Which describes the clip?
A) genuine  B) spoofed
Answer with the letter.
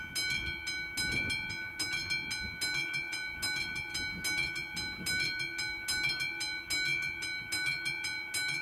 A